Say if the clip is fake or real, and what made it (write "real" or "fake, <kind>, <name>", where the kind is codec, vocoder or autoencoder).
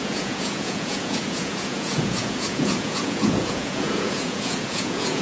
fake, vocoder, Vocos